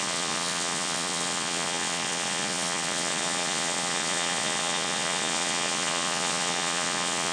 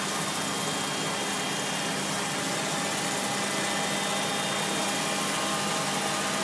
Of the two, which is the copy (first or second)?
first